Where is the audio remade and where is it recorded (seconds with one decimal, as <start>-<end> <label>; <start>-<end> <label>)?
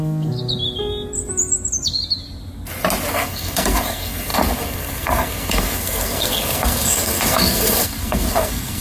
0.0-0.4 remade; 0.4-3.1 recorded; 3.1-8.8 remade